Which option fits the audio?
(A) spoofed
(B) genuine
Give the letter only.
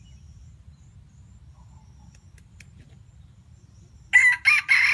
B